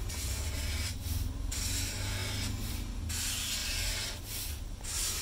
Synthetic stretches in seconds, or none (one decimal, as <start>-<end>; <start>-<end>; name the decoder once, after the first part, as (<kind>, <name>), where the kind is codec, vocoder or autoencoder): 3.6-4.8 (vocoder, BigVGAN v2)